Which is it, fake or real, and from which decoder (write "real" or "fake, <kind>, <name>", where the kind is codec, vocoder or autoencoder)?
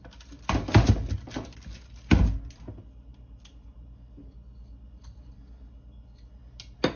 real